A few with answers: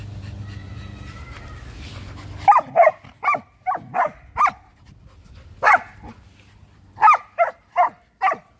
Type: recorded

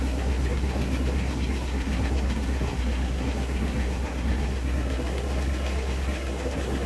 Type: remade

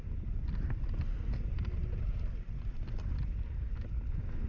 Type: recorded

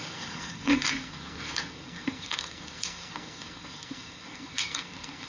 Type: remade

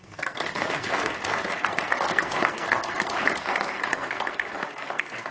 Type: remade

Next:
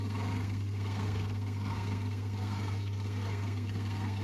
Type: remade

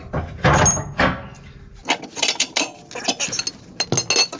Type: recorded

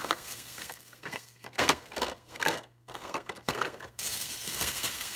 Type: remade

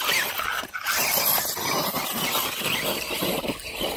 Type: recorded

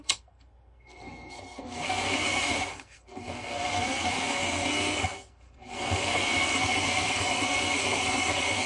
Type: remade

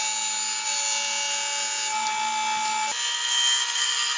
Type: recorded